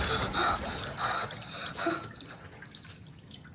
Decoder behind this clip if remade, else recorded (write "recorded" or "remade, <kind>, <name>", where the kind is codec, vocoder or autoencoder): recorded